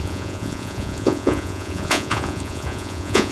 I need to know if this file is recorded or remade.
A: remade